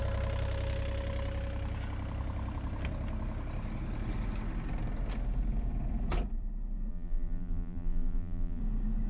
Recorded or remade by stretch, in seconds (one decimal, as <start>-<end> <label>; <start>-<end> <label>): 0.0-6.9 recorded; 6.9-8.6 remade; 8.6-9.1 recorded